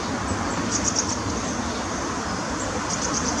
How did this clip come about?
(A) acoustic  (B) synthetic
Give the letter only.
B